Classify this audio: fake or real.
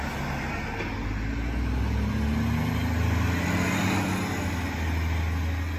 real